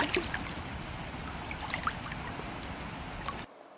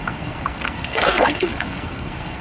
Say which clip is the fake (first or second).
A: second